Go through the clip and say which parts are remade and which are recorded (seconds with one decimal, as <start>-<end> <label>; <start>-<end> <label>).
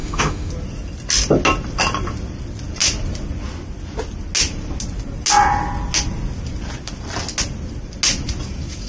0.0-0.5 remade; 0.5-8.9 recorded